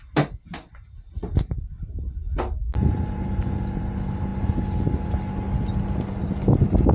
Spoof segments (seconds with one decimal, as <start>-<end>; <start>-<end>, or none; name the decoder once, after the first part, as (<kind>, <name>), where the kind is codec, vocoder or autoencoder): none